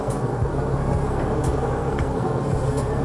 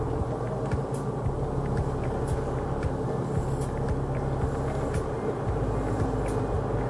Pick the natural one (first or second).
second